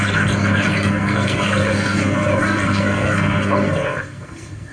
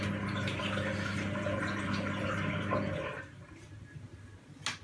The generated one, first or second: first